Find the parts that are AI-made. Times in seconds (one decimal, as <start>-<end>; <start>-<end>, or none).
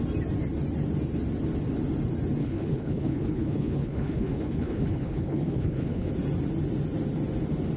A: 2.4-6.1